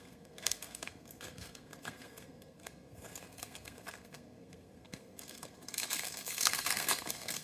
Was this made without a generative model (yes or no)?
no